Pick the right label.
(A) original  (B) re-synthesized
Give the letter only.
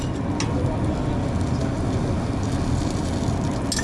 A